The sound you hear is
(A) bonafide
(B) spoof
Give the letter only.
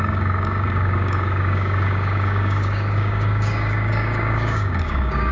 B